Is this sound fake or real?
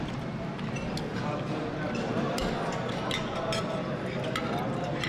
real